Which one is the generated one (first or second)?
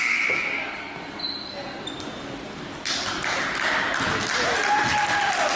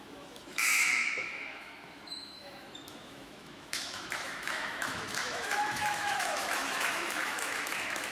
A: second